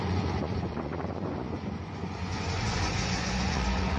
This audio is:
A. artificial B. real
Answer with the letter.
A